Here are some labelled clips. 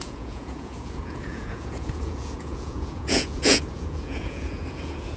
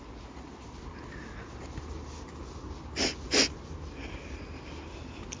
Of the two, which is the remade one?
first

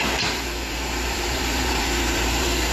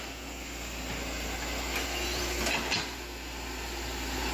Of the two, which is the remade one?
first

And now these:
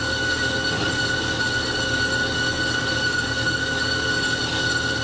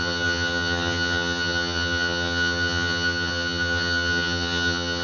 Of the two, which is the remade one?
second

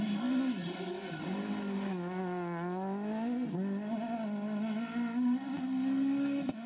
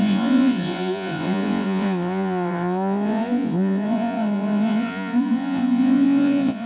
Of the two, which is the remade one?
second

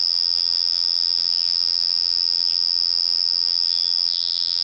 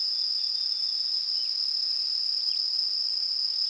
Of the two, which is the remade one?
first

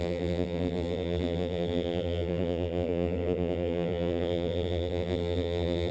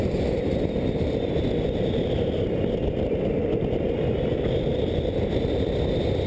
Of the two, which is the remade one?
first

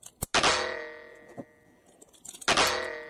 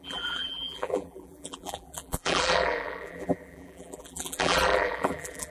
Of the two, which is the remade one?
second